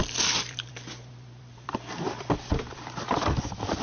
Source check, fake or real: fake